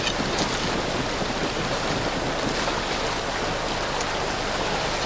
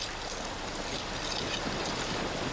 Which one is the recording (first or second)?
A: first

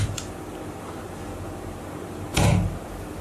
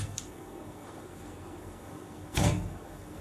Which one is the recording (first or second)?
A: first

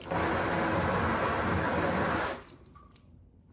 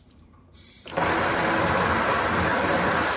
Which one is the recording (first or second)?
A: first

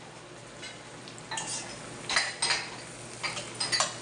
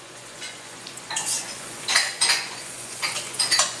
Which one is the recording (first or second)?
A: first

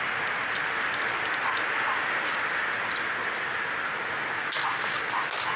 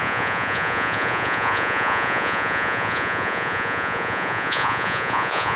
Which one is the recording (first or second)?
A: first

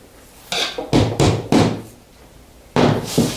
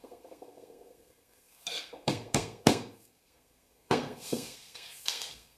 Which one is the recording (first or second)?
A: first